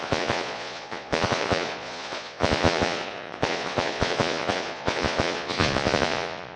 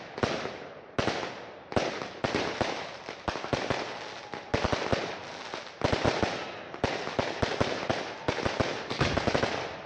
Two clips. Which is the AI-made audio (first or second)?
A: first